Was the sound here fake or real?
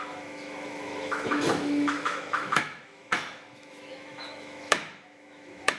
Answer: fake